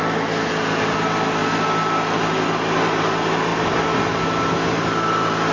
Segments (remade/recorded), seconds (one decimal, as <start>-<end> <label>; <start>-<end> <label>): 0.0-5.5 recorded